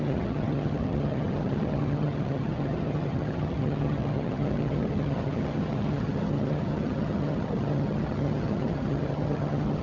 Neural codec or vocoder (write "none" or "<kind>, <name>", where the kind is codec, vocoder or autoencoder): vocoder, HiFi-GAN